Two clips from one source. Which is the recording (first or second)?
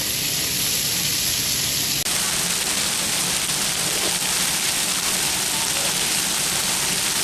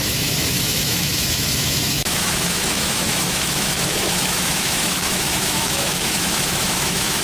first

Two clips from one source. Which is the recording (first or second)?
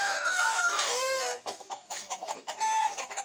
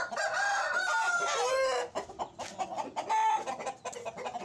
second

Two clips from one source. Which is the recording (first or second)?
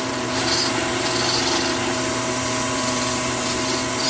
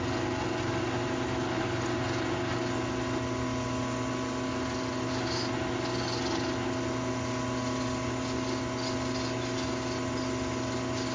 second